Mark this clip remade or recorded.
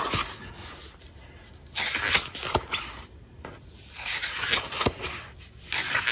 recorded